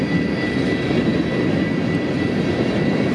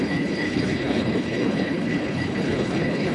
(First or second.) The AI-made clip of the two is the second